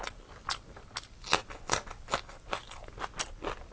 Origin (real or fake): real